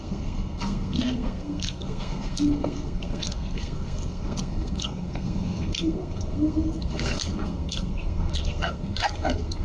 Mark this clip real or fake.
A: fake